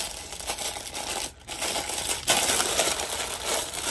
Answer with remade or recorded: recorded